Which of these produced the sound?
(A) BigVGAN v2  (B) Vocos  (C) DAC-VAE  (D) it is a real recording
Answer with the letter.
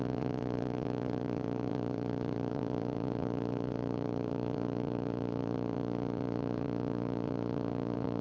B